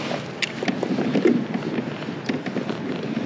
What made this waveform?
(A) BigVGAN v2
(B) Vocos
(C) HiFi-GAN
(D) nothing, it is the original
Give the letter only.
D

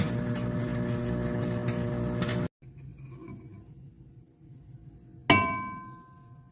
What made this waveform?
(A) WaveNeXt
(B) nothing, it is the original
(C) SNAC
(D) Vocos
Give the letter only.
B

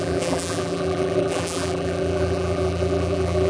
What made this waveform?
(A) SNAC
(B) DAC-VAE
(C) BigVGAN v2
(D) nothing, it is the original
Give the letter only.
C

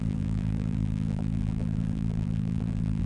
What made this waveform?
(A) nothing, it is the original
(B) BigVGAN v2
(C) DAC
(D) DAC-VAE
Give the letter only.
B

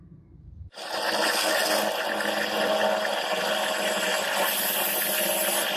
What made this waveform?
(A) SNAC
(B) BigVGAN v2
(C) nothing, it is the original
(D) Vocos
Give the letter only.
C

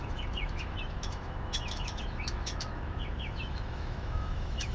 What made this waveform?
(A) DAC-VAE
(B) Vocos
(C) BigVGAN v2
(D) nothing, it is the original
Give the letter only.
A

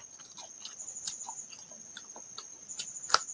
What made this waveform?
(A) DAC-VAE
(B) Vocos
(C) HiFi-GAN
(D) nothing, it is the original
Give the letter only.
D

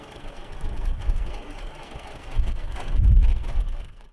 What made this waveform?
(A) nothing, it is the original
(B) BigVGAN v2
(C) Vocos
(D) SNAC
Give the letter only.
D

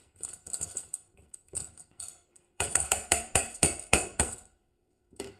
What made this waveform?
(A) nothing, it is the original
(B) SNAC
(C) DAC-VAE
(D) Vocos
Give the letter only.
B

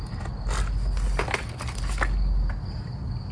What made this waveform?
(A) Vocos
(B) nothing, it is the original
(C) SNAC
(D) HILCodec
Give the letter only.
B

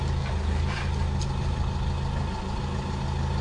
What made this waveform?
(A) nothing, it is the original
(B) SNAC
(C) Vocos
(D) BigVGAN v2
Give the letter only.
A